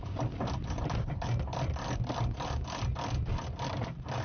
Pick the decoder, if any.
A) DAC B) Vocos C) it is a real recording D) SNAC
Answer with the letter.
C